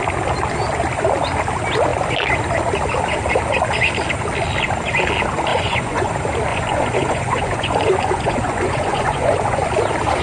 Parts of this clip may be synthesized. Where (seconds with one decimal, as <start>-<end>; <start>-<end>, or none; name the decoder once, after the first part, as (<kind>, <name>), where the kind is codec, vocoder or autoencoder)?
5.5-6.1 (vocoder, Vocos); 6.5-9.7